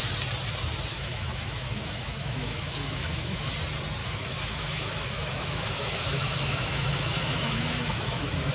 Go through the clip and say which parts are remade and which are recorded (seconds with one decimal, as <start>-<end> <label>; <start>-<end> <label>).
0.0-0.9 recorded; 0.9-3.5 remade; 3.5-4.0 recorded; 4.0-8.5 remade